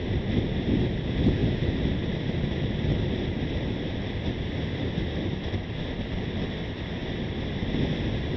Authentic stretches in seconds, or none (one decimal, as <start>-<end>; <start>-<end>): 0.0-1.4; 1.9-7.0; 7.7-8.4

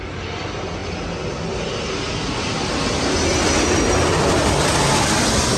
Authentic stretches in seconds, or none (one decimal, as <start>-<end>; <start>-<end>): 0.0-5.6

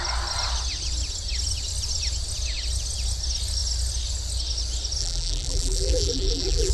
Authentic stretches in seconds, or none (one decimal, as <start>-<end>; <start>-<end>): 0.0-5.0

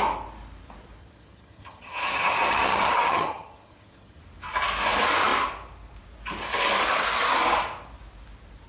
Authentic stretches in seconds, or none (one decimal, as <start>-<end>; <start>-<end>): 0.0-1.0; 4.2-8.7

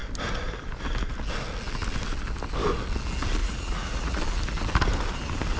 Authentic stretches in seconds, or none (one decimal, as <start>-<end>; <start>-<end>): 0.0-3.4; 4.2-5.6